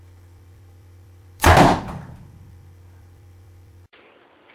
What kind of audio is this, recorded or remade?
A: remade